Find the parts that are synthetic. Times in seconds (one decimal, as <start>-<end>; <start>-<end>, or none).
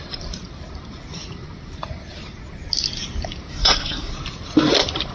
3.5-4.1